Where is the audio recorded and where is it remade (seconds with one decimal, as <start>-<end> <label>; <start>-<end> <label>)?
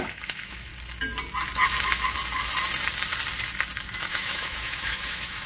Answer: 0.0-0.7 remade; 0.7-4.0 recorded; 4.0-5.5 remade